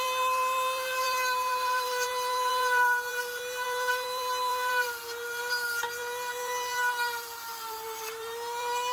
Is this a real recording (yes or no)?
no